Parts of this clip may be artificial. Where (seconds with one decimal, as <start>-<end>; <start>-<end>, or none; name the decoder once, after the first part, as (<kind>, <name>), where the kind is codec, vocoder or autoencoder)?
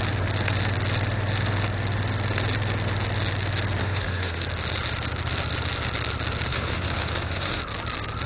3.8-4.4 (autoencoder, DAC-VAE); 6.5-7.6